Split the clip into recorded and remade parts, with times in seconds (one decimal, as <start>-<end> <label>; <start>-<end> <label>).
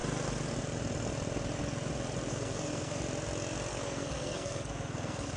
0.0-2.3 recorded; 2.3-3.0 remade; 3.0-3.7 recorded; 3.7-5.4 remade